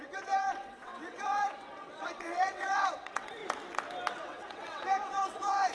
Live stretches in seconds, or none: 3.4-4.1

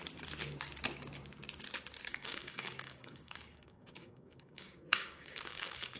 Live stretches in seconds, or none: 0.0-2.1

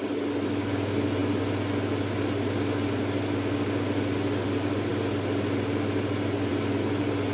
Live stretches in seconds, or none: 0.0-7.3

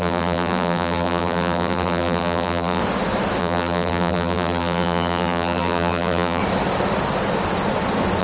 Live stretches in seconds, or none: 2.8-3.4; 6.4-8.2

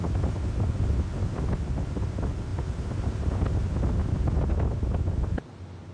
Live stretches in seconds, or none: 0.0-5.9

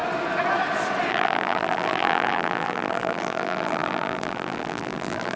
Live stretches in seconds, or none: 0.0-1.1

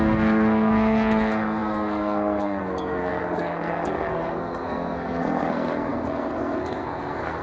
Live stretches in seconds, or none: none